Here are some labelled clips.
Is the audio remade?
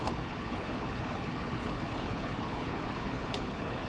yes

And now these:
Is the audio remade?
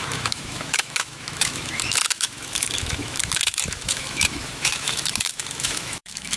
yes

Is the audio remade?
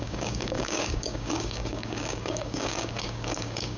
yes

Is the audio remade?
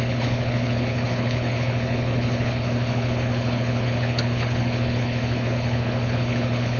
yes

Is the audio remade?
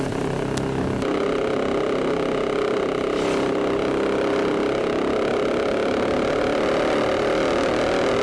no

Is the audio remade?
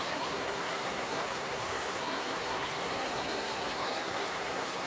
yes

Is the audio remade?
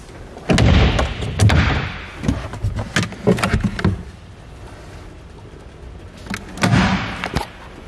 no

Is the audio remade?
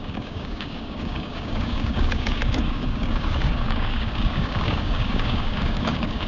yes